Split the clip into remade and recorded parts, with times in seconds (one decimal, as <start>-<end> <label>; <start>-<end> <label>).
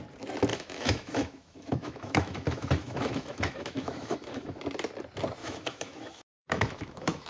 0.0-0.5 recorded; 0.5-4.6 remade; 4.6-5.4 recorded; 5.4-7.3 remade